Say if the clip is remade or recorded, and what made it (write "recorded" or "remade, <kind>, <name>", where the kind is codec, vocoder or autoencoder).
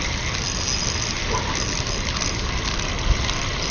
recorded